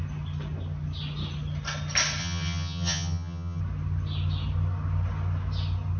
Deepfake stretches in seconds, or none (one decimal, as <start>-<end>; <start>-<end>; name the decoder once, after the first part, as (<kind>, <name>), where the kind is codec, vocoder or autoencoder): 2.2-3.6 (vocoder, HiFi-GAN)